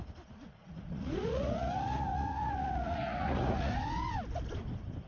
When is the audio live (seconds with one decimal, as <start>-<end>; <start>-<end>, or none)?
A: 0.0-0.6; 3.7-5.1